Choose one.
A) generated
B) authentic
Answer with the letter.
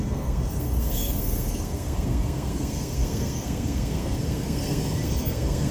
A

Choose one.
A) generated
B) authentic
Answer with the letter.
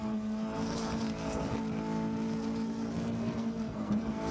A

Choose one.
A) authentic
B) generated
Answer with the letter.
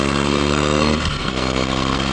B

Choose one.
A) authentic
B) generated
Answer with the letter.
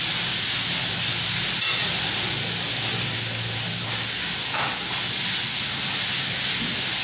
A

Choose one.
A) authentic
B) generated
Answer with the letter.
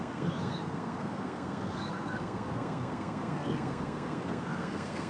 B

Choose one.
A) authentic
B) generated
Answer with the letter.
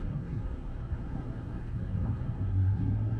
B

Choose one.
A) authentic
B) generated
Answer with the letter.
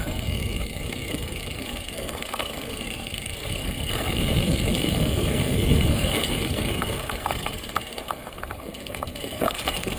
B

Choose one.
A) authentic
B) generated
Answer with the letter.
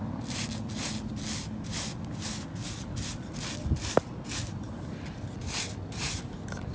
A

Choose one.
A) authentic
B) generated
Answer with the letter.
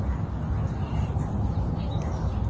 A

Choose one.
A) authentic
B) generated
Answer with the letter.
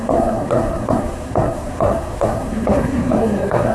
B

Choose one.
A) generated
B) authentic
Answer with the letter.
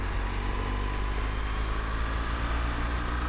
B